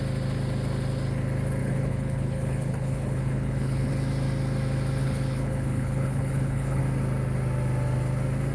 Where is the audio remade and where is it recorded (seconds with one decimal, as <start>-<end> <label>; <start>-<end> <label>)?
0.0-1.6 recorded; 1.6-3.9 remade; 3.9-5.0 recorded; 5.0-6.8 remade; 6.8-8.5 recorded